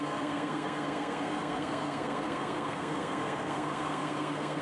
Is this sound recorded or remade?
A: remade